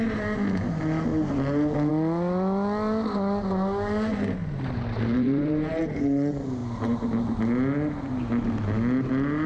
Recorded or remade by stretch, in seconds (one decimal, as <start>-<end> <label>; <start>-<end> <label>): 0.0-4.1 recorded; 4.1-5.8 remade; 5.8-9.5 recorded